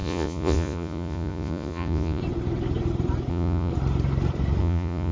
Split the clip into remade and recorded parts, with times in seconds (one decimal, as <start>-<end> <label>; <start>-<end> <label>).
0.0-2.2 remade; 2.2-3.3 recorded; 3.3-3.7 remade; 3.7-4.6 recorded; 4.6-5.1 remade